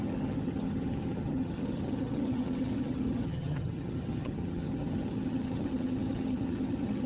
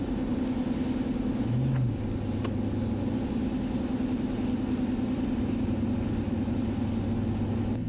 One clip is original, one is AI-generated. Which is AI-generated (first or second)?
first